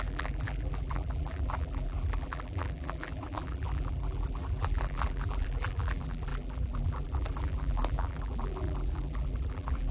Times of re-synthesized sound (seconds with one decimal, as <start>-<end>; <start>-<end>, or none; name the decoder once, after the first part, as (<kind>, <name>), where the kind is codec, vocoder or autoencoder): 0.0-9.9 (vocoder, BigVGAN v2)